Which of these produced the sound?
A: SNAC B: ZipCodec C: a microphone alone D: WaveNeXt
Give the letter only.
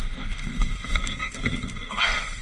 A